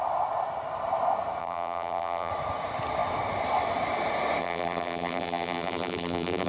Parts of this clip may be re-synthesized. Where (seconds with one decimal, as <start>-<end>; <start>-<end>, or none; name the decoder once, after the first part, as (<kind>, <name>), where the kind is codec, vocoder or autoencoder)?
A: 1.4-2.3 (vocoder, BigVGAN v2); 4.4-6.5